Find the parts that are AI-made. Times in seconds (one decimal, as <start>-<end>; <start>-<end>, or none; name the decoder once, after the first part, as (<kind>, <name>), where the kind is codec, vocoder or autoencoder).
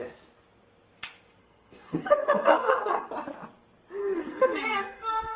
1.4-3.1 (codec, SNAC); 4.0-5.4